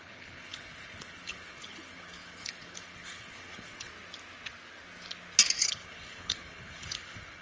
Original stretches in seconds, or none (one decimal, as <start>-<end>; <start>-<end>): 3.9-5.6